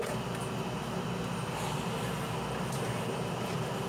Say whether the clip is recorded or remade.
recorded